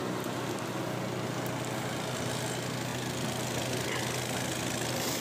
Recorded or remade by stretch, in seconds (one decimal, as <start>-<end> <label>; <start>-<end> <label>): 0.0-5.2 recorded

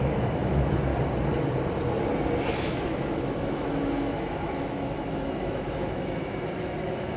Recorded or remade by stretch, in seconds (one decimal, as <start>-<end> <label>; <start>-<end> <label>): 0.0-0.9 remade; 0.9-2.5 recorded; 2.5-7.2 remade

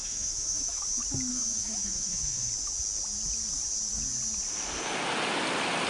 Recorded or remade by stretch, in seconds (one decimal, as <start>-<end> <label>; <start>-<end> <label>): 0.0-0.8 remade; 0.8-1.3 recorded; 1.3-2.5 remade; 2.5-5.9 recorded

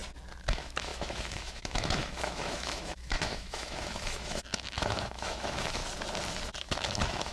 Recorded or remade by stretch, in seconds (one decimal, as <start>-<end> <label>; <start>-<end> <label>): 0.0-0.5 recorded; 0.5-5.8 remade; 5.8-6.6 recorded; 6.6-7.3 remade

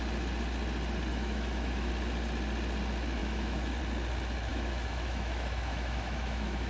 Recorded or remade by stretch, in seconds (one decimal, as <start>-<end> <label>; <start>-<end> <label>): 0.0-1.1 recorded; 1.1-1.9 remade; 1.9-3.2 recorded; 3.2-3.8 remade; 3.8-4.5 recorded; 4.5-6.7 remade